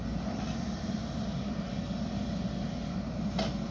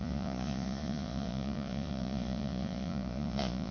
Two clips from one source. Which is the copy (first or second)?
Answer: second